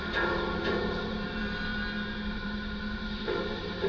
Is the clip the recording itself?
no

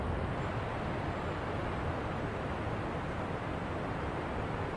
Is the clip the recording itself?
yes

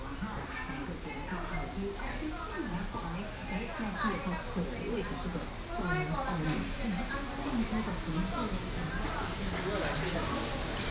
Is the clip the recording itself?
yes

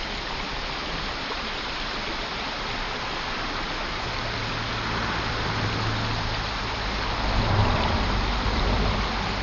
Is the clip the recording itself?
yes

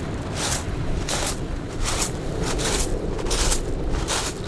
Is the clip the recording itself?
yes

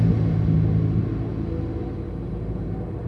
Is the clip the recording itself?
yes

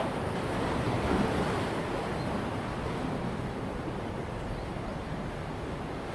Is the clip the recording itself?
yes